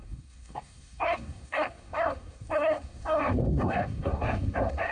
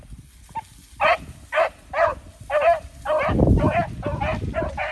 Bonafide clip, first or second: second